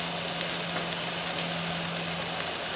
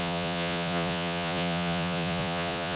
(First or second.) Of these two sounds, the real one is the first